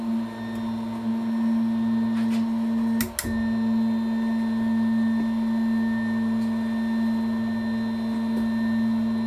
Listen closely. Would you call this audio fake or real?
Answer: real